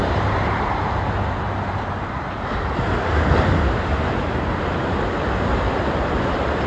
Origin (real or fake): fake